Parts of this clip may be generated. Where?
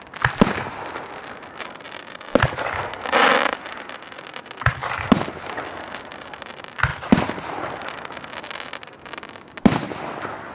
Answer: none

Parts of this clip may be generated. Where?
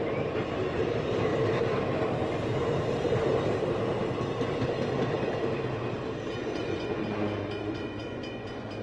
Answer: 6.4-8.8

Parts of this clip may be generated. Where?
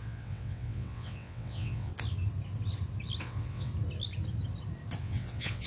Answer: 0.0-1.9; 3.2-3.7; 5.0-5.7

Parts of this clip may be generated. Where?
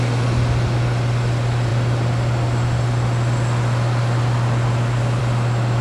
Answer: none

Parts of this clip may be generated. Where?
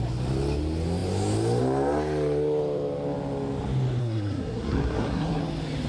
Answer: 4.0-5.4